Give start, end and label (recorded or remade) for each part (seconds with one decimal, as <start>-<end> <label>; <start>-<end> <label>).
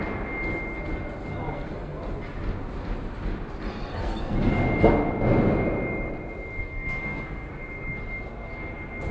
0.0-1.4 recorded; 1.4-2.0 remade; 2.0-3.7 recorded; 3.7-4.5 remade; 4.5-6.6 recorded; 6.6-7.5 remade; 7.5-9.1 recorded